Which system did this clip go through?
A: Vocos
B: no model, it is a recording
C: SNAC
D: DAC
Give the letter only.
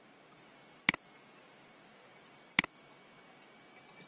B